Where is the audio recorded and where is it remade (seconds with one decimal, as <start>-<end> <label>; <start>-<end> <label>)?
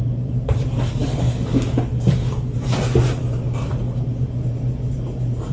0.0-5.5 recorded